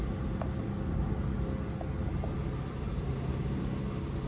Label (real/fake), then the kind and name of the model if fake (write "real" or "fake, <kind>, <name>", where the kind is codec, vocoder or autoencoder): real